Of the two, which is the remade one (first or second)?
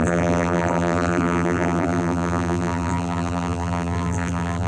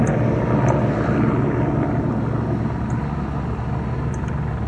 first